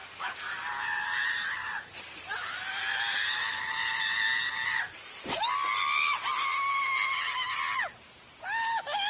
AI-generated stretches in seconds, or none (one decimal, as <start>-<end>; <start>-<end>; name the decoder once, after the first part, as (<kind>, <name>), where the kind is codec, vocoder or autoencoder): 0.0-3.8 (vocoder, BigVGAN v2); 6.7-9.1